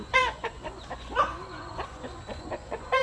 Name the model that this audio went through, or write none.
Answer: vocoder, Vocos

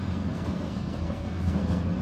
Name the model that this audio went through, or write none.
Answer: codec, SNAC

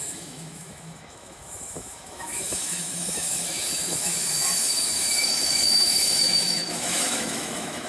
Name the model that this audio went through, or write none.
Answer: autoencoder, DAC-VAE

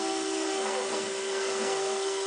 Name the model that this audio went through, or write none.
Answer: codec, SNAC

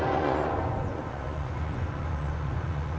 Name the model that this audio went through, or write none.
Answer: vocoder, Vocos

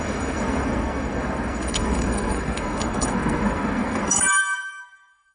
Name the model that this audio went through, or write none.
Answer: codec, SNAC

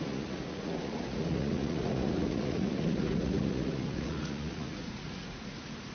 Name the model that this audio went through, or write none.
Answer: vocoder, Vocos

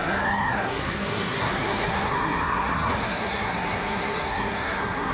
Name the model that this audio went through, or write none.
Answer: codec, SNAC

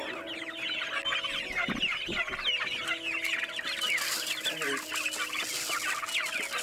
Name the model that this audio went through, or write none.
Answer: none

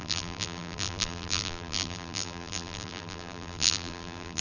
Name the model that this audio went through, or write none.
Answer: vocoder, BigVGAN v2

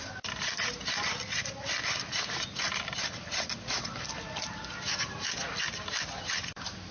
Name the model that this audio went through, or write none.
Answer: none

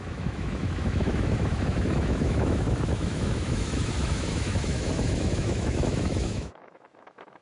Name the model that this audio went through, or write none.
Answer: autoencoder, DAC-VAE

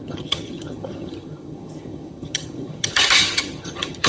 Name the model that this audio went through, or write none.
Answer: vocoder, HiFi-GAN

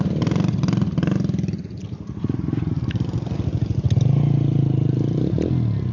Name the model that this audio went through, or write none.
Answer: none